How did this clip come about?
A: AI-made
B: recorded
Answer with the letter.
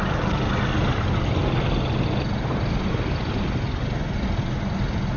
B